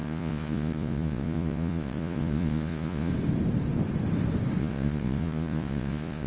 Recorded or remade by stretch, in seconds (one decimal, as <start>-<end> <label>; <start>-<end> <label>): 0.0-3.1 remade; 3.1-4.6 recorded; 4.6-6.3 remade